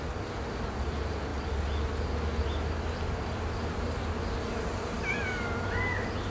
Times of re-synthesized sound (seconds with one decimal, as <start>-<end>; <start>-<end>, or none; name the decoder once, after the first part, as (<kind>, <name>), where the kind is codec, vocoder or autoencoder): none